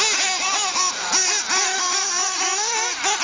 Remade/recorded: recorded